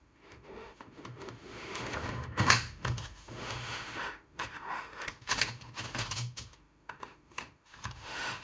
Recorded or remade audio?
remade